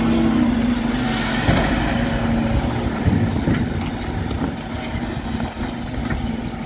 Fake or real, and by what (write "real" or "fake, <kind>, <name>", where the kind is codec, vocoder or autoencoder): real